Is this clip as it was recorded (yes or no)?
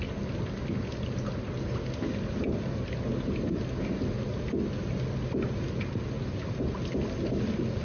yes